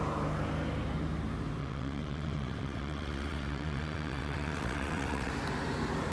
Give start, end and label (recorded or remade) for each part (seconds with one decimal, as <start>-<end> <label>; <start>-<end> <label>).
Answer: 0.0-1.6 recorded; 1.6-5.3 remade; 5.3-6.1 recorded